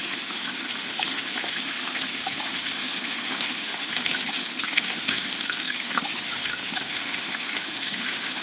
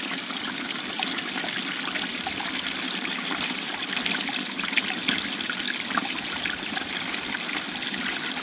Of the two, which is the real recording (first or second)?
second